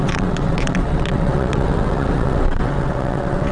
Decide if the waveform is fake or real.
fake